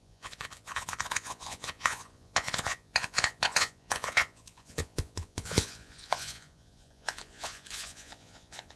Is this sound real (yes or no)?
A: no